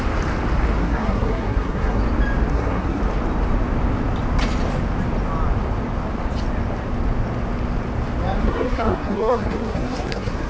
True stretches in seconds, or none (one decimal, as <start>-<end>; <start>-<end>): 0.0-0.8; 2.0-2.5; 3.0-8.4